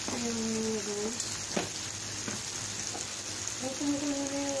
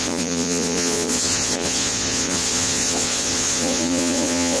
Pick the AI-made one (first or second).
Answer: second